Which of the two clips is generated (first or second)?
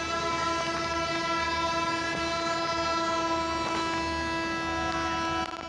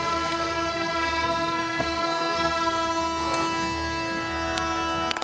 second